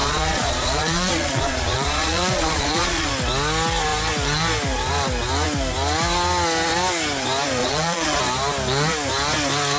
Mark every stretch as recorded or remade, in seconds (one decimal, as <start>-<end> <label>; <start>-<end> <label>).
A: 0.0-3.1 remade; 3.1-7.6 recorded; 7.6-8.2 remade; 8.2-9.8 recorded